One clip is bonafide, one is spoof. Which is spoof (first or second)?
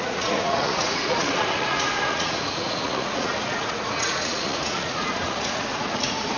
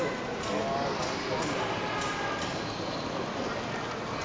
first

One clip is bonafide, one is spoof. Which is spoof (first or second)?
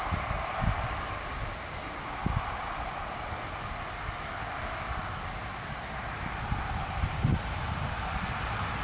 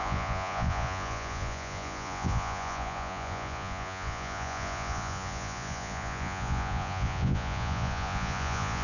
second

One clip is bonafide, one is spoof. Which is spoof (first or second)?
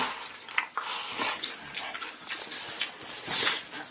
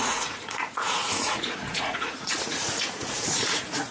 second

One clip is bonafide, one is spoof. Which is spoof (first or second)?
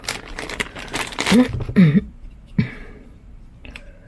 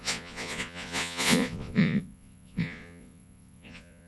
second